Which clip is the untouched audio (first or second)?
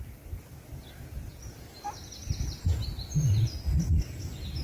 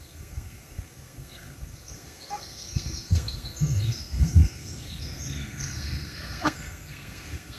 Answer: first